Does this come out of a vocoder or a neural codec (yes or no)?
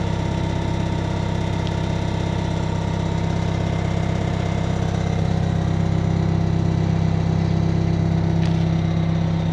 no